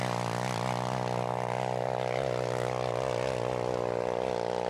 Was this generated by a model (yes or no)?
no